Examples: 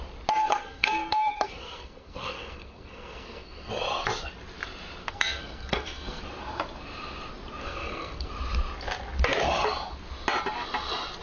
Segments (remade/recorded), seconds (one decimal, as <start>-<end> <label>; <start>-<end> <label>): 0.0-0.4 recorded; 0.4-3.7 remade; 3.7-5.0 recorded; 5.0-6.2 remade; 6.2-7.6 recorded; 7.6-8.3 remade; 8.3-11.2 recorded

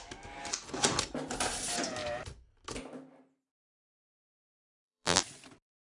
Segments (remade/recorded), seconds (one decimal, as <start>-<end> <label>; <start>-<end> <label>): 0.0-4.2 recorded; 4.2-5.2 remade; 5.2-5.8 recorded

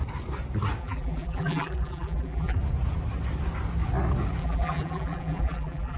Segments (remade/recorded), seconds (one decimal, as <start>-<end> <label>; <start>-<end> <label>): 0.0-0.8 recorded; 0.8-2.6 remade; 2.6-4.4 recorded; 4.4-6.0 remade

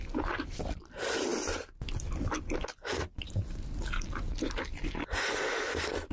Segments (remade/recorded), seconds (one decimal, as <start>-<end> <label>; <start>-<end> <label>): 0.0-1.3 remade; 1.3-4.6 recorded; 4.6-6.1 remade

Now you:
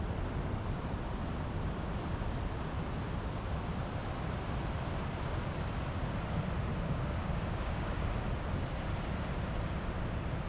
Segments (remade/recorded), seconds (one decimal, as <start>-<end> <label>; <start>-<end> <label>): 0.0-6.7 recorded; 6.7-8.0 remade; 8.0-10.5 recorded

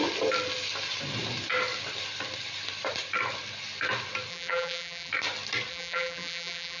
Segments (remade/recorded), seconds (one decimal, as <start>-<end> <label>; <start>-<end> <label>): 0.0-4.3 recorded; 4.3-5.1 remade; 5.1-5.7 recorded; 5.7-6.8 remade